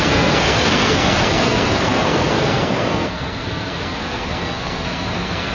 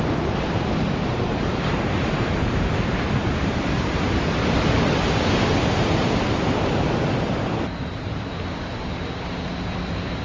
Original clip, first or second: second